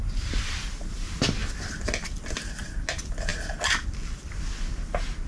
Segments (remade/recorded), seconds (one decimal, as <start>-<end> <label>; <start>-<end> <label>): 0.0-0.9 remade; 0.9-5.3 recorded